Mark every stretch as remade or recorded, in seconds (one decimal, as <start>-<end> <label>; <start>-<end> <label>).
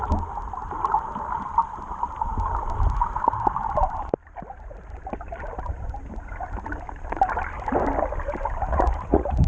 0.0-8.7 recorded; 8.7-9.5 remade